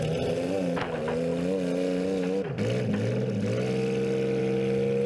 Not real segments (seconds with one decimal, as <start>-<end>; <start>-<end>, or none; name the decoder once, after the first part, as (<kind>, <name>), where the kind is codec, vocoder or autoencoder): none